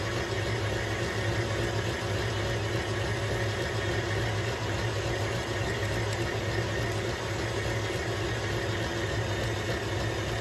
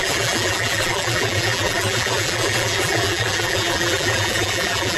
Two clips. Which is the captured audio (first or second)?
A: first